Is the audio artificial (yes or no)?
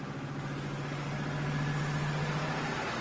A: no